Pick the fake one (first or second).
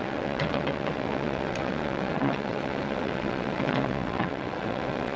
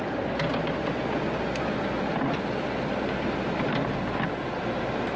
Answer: first